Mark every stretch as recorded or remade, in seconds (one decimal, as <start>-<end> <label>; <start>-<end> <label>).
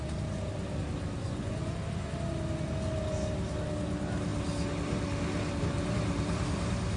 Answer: 0.0-1.2 recorded; 1.2-1.8 remade; 1.8-7.0 recorded